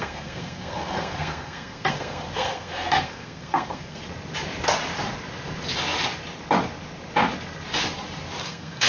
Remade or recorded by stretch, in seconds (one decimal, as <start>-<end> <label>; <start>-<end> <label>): 0.0-4.0 remade; 4.0-8.4 recorded; 8.4-8.9 remade